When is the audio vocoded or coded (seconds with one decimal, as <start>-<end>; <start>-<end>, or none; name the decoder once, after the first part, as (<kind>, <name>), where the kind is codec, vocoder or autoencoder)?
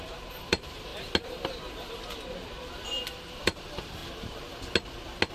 0.0-0.9 (vocoder, BigVGAN v2); 3.4-4.0